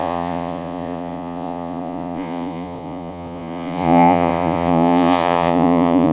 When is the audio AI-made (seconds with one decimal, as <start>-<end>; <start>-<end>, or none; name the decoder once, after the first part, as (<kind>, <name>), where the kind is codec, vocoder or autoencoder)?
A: 0.0-6.1 (vocoder, Vocos)